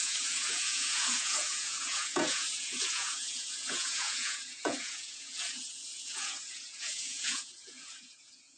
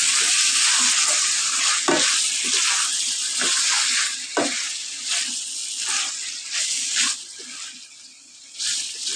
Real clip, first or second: second